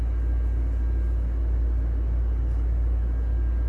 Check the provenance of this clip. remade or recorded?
recorded